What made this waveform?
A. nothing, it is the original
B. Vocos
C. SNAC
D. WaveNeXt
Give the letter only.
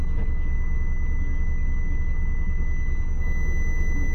A